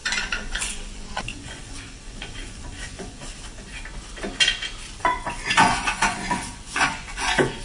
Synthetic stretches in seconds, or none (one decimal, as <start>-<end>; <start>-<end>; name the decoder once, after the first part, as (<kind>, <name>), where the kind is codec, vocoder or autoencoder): 0.0-3.2 (vocoder, Vocos); 5.0-7.6